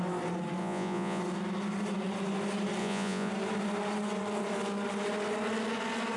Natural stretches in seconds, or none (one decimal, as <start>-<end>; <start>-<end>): 0.0-0.6; 1.2-2.8; 3.3-6.2